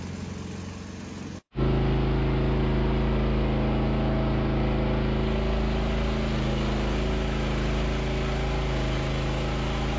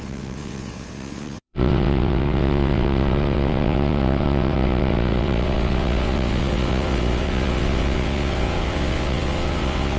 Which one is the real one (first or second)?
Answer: first